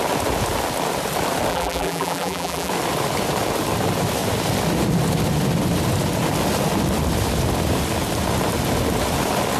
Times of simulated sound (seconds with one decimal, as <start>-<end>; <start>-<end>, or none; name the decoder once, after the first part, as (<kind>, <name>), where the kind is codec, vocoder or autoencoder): 1.5-2.7 (vocoder, BigVGAN v2)